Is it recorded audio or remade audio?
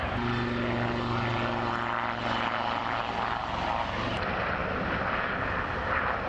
recorded